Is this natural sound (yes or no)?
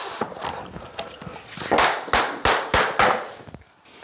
yes